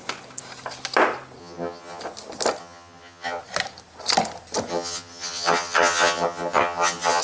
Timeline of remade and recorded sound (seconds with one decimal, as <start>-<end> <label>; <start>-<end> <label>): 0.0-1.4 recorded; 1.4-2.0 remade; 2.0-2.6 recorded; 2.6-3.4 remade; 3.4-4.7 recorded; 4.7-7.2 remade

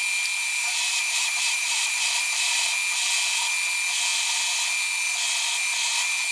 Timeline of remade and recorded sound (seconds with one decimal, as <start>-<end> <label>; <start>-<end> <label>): 0.0-0.4 recorded; 0.4-2.6 remade; 2.6-6.3 recorded

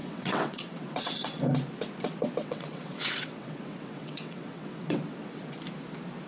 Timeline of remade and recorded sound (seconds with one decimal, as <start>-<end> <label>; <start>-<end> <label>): 0.0-1.4 remade; 1.4-2.4 recorded; 2.4-5.4 remade; 5.4-6.3 recorded

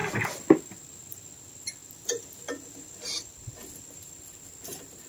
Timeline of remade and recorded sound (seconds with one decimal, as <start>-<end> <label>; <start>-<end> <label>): 0.0-1.3 remade; 1.3-1.8 recorded; 1.8-5.1 remade

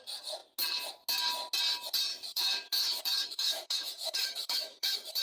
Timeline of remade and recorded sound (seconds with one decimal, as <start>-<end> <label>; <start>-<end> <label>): 0.0-2.1 recorded; 2.1-5.2 remade

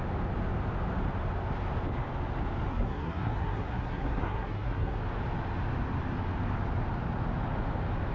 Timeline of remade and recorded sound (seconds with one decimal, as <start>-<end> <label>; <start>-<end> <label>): 0.0-2.7 recorded; 2.7-5.0 remade; 5.0-8.1 recorded

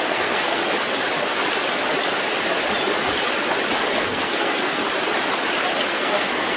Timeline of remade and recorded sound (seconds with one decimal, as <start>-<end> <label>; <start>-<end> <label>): 0.0-0.6 remade; 0.6-4.0 recorded; 4.0-4.8 remade; 4.8-5.9 recorded; 5.9-6.6 remade

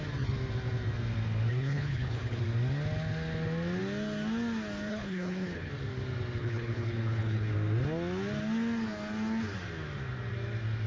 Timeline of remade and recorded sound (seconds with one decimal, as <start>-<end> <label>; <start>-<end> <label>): 0.0-1.5 recorded; 1.5-2.4 remade; 2.4-4.9 recorded; 4.9-5.7 remade; 5.7-6.4 recorded; 6.4-7.5 remade; 7.5-10.9 recorded